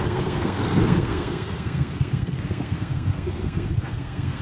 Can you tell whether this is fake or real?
fake